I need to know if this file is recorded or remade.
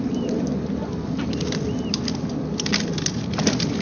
recorded